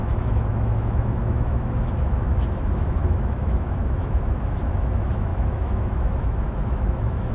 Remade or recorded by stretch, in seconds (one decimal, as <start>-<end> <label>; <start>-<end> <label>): 0.0-7.3 remade